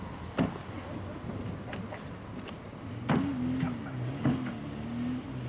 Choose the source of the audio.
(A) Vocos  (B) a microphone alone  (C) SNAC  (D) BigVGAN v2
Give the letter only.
B